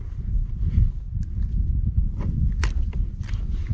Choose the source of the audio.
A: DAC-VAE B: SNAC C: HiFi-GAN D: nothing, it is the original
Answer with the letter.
D